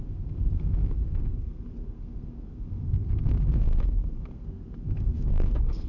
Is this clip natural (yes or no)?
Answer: no